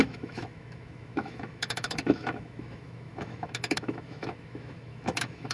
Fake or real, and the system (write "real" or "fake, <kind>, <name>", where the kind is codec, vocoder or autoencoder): fake, autoencoder, DAC-VAE